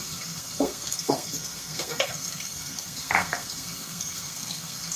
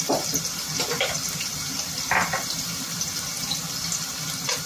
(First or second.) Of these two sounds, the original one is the second